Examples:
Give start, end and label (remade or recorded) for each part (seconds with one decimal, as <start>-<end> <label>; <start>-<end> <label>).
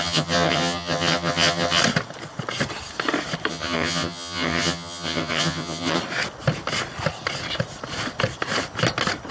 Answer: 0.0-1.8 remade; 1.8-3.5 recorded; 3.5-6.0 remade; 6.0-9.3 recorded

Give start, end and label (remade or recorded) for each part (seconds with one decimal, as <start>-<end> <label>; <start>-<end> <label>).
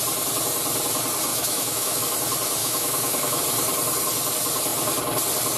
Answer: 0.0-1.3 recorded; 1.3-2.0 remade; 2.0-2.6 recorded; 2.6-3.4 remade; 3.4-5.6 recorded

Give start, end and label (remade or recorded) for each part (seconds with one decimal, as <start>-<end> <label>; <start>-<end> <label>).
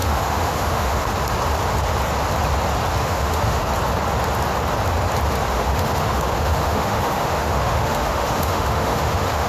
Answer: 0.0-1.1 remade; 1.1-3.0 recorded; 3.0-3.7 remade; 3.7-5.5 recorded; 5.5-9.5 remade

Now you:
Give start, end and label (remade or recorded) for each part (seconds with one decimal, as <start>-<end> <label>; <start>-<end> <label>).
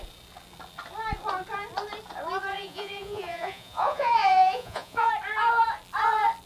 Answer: 0.0-2.5 recorded; 2.5-5.1 remade; 5.1-6.5 recorded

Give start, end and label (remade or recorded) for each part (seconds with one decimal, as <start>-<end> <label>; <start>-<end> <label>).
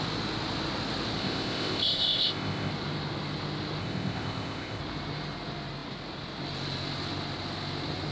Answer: 0.0-1.2 recorded; 1.2-2.7 remade; 2.7-3.8 recorded; 3.8-4.8 remade; 4.8-8.1 recorded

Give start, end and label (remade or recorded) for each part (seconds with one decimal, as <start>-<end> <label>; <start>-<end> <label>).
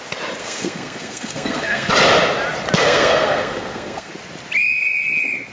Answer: 0.0-0.4 recorded; 0.4-1.9 remade; 1.9-2.8 recorded; 2.8-4.1 remade; 4.1-5.5 recorded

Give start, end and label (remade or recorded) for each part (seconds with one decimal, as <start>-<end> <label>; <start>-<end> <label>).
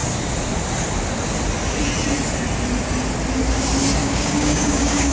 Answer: 0.0-4.0 recorded; 4.0-5.1 remade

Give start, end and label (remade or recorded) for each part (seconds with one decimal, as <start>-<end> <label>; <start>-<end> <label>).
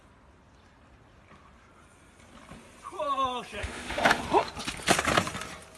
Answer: 0.0-3.6 recorded; 3.6-4.2 remade; 4.2-5.8 recorded